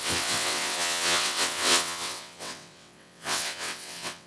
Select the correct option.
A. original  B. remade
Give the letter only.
B